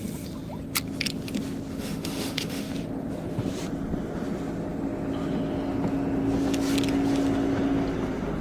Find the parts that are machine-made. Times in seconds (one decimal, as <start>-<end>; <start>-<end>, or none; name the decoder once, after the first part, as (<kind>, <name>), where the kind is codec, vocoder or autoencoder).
1.7-2.7 (autoencoder, DAC-VAE)